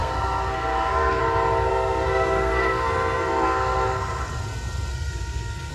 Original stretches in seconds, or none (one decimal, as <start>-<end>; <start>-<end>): 1.2-1.7; 4.2-4.9

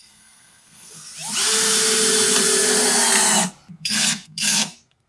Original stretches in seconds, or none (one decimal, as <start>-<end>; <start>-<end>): 1.1-3.7

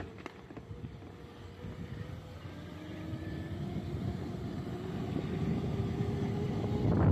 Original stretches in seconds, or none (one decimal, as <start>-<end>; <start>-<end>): 0.0-7.1

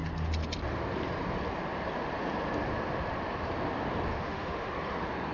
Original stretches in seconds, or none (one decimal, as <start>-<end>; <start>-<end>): 0.0-4.1; 4.7-5.3

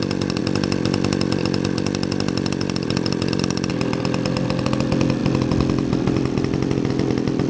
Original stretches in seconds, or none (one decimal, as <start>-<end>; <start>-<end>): 0.0-7.5

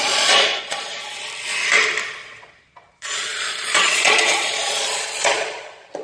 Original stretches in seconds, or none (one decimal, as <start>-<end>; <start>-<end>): 1.0-2.4

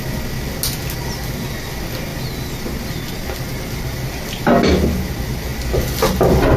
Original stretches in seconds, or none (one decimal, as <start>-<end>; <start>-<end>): 0.0-6.6